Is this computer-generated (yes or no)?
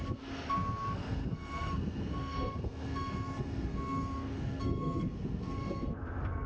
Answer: yes